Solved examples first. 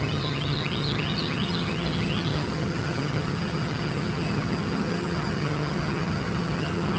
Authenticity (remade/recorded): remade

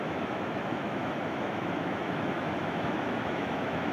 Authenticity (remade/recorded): remade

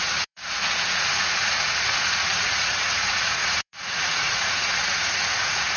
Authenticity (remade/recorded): remade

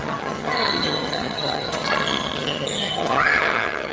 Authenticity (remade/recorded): remade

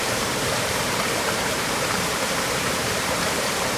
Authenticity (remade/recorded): remade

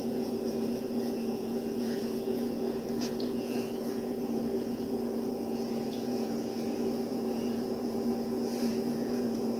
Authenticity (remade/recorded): remade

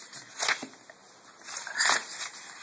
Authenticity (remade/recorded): recorded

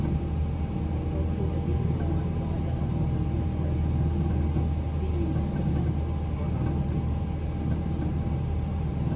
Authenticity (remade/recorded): recorded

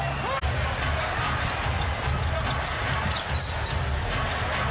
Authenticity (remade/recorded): recorded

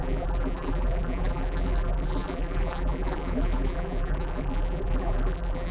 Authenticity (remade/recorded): remade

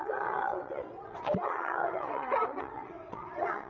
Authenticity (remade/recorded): remade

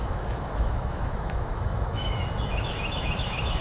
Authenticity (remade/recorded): remade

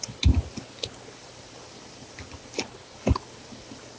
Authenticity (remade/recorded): recorded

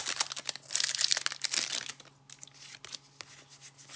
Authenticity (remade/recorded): recorded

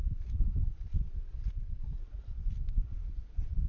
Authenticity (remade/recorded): recorded